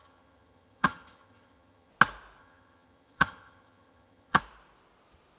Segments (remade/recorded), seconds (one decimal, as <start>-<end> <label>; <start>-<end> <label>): 0.0-1.9 remade; 1.9-2.4 recorded; 2.4-4.4 remade; 4.4-5.4 recorded